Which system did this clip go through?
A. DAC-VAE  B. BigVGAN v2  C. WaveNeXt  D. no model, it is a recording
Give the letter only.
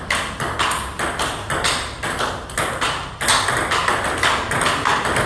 D